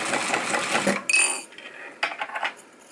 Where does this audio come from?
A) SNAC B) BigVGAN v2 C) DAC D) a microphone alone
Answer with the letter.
D